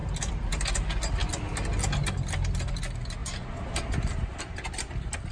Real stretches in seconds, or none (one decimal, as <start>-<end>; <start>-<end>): 0.0-5.3